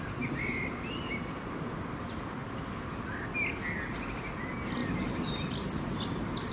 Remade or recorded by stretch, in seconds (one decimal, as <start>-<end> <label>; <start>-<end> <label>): 0.0-6.5 recorded